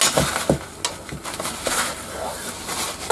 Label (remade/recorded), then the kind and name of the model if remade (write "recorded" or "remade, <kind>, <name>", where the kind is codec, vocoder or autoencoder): recorded